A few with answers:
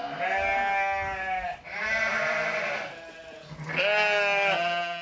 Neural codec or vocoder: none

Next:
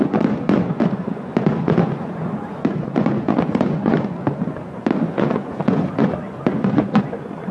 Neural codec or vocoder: vocoder, Vocos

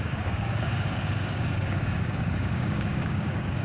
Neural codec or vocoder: codec, DAC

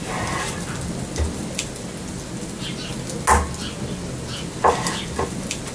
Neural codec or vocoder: none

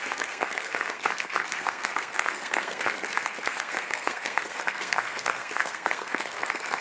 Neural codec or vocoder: codec, SNAC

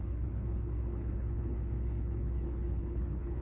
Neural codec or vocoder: codec, HILCodec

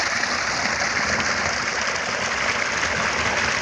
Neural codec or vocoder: none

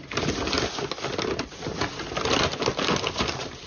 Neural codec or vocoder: none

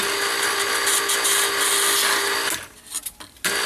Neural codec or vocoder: none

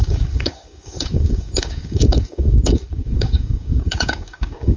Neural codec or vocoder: codec, DAC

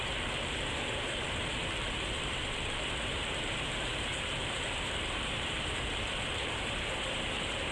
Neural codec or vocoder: vocoder, BigVGAN v2